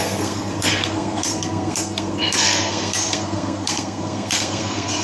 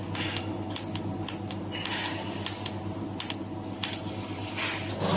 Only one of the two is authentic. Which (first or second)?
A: second